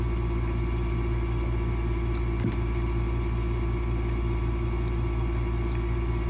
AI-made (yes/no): no